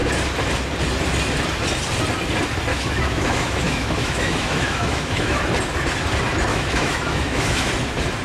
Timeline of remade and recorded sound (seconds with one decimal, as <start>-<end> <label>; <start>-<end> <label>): 0.0-2.7 recorded; 2.7-5.4 remade; 5.4-6.5 recorded; 6.5-7.7 remade; 7.7-8.2 recorded